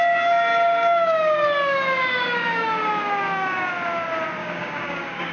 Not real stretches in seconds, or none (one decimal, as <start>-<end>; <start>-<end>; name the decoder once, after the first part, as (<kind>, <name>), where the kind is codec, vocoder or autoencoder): 0.5-3.7 (codec, DAC); 4.4-5.3